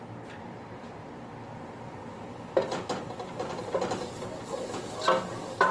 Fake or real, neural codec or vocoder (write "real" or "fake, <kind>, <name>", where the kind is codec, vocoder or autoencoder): real